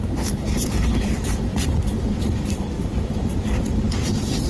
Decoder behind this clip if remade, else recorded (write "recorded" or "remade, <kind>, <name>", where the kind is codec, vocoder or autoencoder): recorded